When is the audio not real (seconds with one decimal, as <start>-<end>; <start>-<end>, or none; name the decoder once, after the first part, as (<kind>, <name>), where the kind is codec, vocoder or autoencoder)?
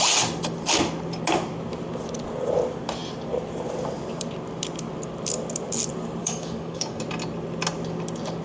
6.2-7.0 (codec, DAC)